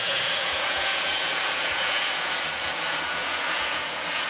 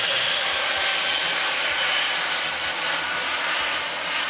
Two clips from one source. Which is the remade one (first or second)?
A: first